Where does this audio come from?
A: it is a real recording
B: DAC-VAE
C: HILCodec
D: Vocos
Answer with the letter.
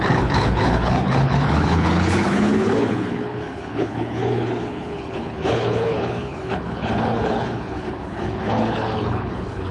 C